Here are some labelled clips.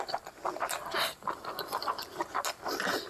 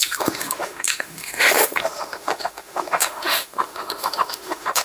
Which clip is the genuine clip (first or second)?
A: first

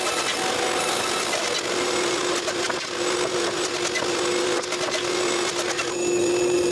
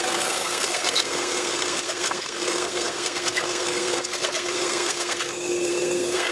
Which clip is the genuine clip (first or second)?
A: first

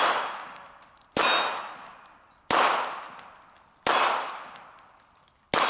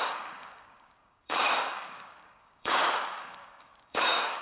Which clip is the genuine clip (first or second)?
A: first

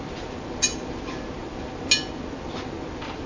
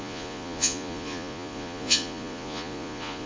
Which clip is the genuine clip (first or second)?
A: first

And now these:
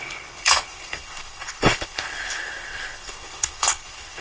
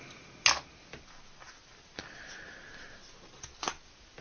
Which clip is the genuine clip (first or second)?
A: second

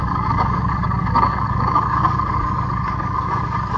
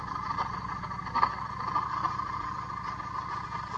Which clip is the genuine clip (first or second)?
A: second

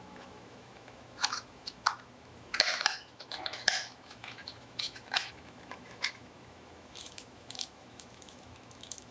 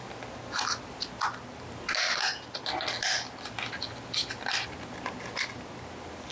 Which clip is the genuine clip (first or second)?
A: second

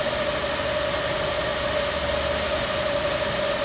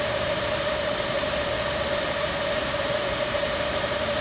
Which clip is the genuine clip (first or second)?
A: first